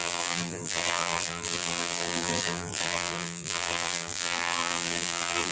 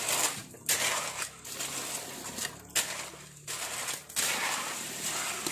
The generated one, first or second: first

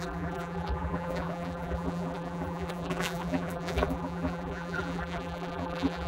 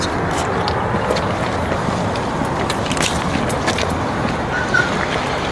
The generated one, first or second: first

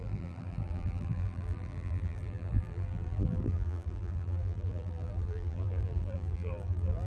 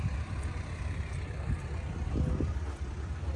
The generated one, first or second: first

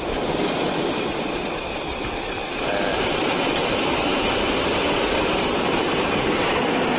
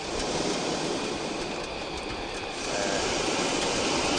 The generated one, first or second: first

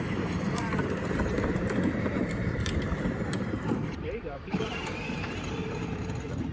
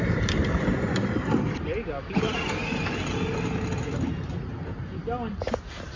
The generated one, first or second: first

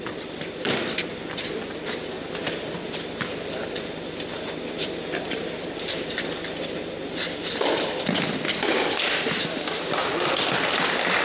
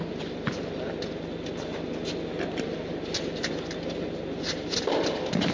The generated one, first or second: first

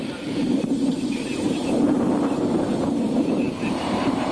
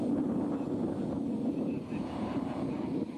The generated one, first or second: first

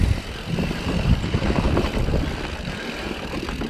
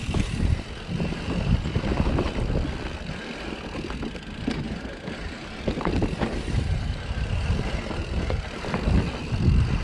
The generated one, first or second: first